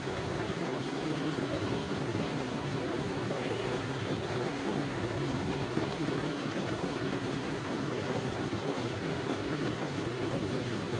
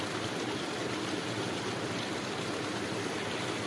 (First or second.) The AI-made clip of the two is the first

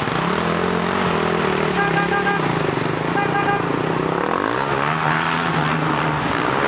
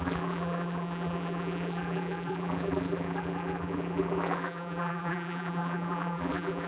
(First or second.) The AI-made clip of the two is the second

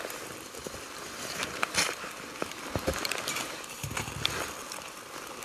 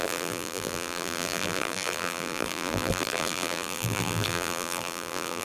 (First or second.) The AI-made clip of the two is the second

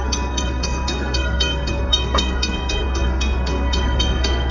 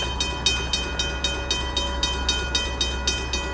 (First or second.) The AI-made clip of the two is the first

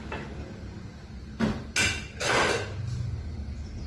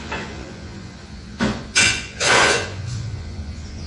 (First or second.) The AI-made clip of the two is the second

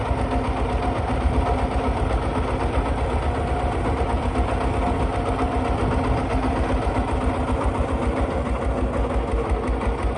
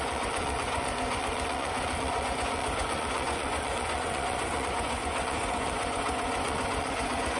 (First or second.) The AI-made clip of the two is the second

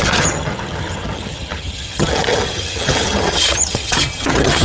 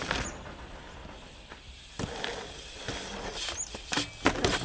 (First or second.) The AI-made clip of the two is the first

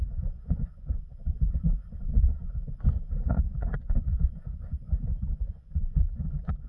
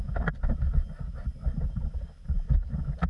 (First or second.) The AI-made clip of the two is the first